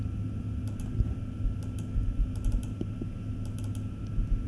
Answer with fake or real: real